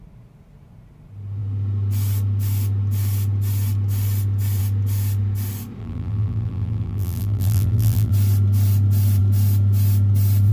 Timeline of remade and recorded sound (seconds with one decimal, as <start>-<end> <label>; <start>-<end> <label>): 0.0-5.8 recorded; 5.8-8.1 remade; 8.1-10.5 recorded